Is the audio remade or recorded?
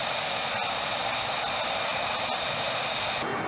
recorded